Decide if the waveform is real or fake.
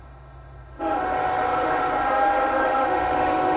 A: fake